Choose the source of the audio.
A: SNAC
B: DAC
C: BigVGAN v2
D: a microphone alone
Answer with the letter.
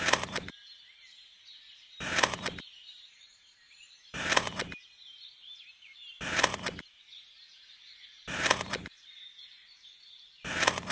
C